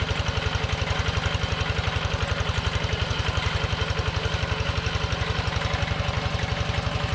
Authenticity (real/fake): real